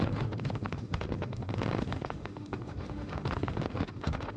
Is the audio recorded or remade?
remade